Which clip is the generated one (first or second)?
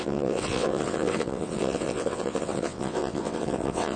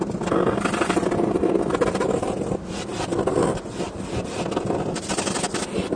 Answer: first